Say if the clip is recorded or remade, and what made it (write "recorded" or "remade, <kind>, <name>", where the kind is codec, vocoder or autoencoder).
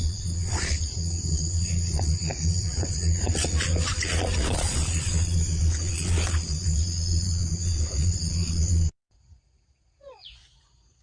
remade, vocoder, Vocos